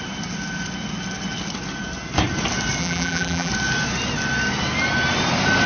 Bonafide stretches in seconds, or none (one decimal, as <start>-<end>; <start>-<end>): 0.0-2.8; 3.5-5.7